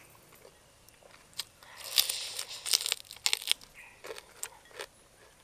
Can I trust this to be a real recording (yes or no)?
yes